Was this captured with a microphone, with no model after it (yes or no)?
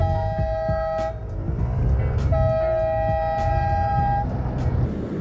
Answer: yes